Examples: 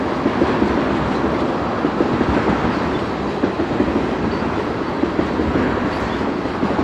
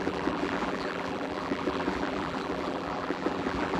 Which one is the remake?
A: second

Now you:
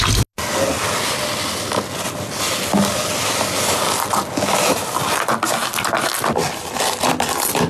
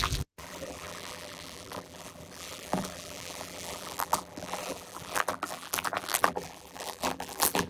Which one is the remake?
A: second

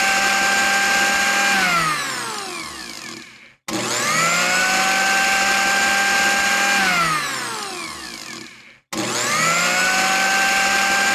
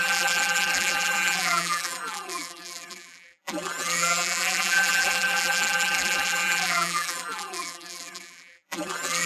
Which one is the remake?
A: second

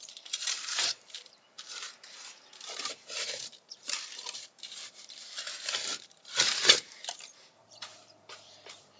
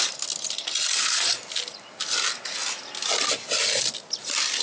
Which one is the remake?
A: first